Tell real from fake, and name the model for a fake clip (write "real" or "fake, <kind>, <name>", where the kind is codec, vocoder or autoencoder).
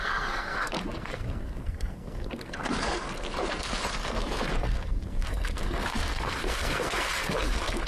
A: fake, codec, SNAC